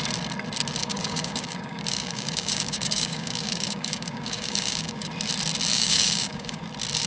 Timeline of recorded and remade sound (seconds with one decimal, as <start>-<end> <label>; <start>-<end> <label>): 0.0-0.8 recorded; 0.8-5.1 remade; 5.1-5.7 recorded; 5.7-6.6 remade; 6.6-7.1 recorded